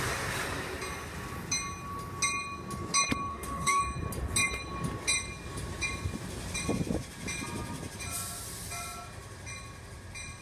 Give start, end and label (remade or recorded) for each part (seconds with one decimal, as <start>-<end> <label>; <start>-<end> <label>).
0.0-3.3 recorded; 3.3-3.8 remade; 3.8-10.4 recorded